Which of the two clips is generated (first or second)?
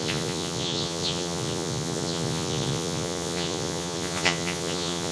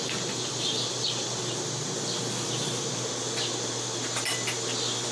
first